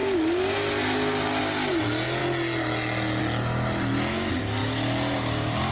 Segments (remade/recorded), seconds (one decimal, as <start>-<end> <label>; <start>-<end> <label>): 0.0-5.7 recorded